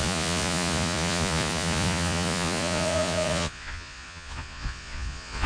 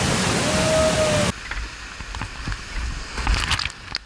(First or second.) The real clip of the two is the second